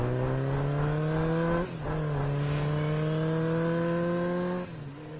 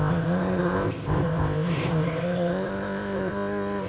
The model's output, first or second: second